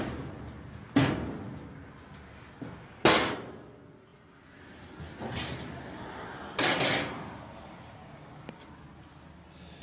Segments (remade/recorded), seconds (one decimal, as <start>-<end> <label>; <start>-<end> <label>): 0.0-9.8 recorded